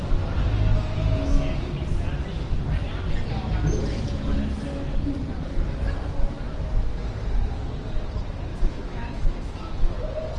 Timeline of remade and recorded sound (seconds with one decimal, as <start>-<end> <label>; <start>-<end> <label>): 0.0-8.5 recorded; 8.5-9.7 remade; 9.7-10.4 recorded